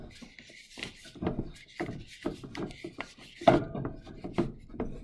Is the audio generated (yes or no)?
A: yes